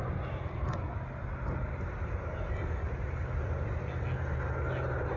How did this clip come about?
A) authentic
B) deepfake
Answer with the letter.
A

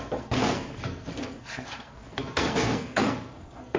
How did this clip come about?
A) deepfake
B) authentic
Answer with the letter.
A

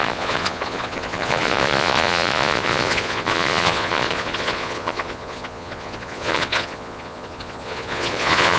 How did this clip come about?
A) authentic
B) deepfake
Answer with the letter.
B